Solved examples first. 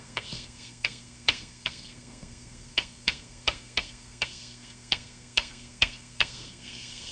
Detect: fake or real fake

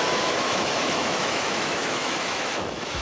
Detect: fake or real fake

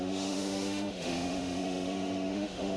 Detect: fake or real fake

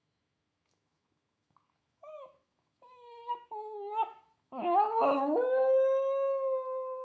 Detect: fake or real fake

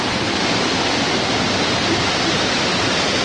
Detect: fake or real real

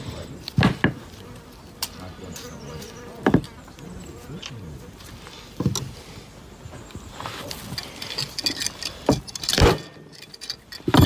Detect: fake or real real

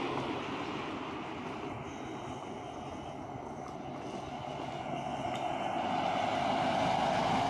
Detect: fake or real real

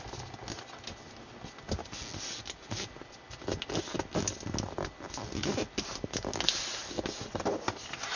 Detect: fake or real real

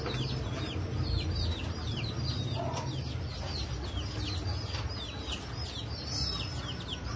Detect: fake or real real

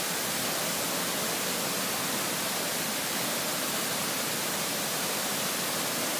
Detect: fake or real real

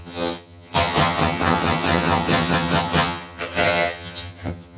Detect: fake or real fake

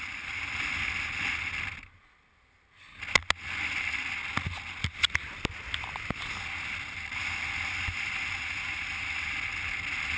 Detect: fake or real real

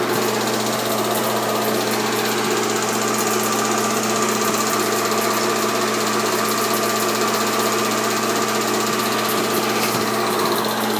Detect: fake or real real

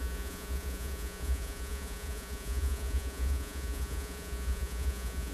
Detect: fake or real fake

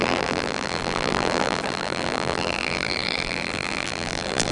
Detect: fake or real fake